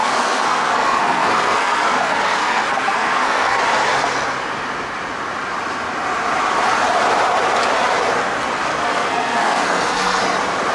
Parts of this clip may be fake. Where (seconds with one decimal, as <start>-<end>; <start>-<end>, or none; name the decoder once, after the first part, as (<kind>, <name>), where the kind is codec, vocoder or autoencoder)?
0.0-3.6 (codec, SNAC); 8.7-10.2